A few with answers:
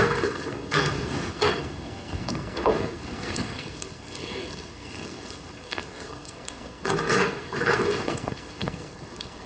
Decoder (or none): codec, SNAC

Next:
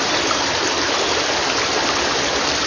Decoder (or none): vocoder, BigVGAN v2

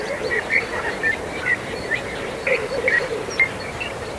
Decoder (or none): none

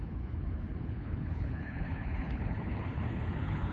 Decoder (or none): codec, HILCodec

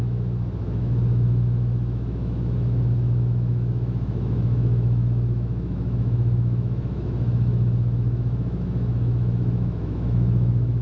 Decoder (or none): autoencoder, DAC-VAE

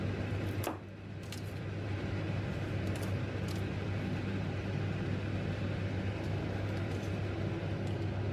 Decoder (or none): none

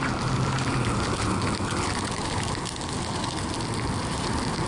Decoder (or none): none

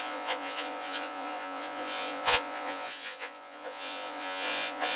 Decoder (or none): vocoder, Vocos